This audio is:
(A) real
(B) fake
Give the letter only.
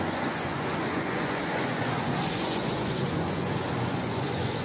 B